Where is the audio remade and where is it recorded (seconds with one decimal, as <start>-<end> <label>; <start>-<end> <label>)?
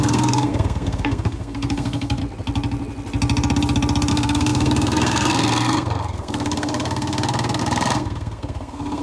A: 0.0-2.2 remade; 2.2-4.1 recorded; 4.1-9.0 remade